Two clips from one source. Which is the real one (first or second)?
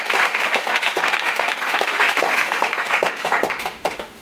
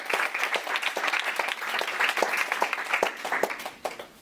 second